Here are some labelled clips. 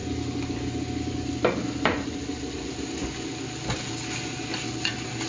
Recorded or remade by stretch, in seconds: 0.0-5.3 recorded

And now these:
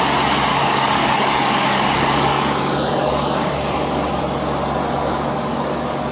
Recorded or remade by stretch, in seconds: 0.0-0.5 recorded; 0.5-4.2 remade; 4.2-5.0 recorded; 5.0-6.1 remade

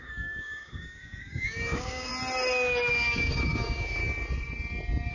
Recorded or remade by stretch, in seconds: 0.0-2.1 remade; 2.1-2.9 recorded; 2.9-4.0 remade; 4.0-5.1 recorded